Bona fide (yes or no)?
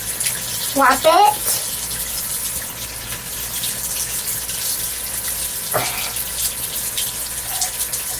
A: yes